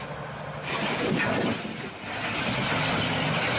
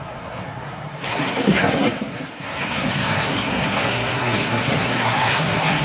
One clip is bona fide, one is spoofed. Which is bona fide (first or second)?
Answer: first